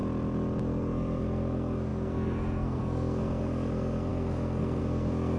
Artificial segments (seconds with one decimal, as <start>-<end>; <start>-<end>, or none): 0.6-5.4